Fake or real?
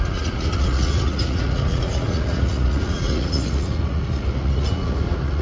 fake